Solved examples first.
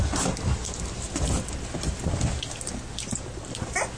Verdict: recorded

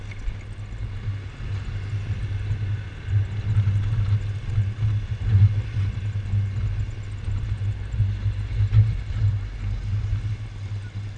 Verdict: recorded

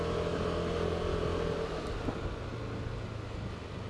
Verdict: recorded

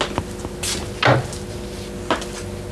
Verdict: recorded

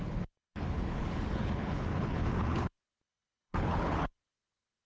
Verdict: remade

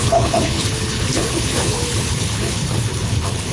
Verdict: remade